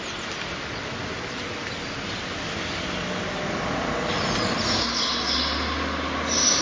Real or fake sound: real